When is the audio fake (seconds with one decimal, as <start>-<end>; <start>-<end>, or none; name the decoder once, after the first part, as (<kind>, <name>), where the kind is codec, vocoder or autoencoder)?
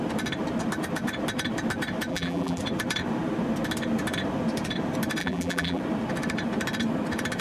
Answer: 2.1-2.6 (vocoder, BigVGAN v2); 5.2-5.8